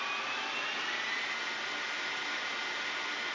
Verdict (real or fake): real